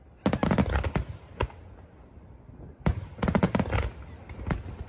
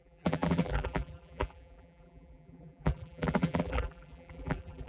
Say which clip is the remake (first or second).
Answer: second